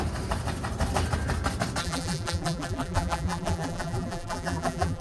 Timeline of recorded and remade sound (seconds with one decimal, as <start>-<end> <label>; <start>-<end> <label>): 0.0-1.8 recorded; 1.8-5.0 remade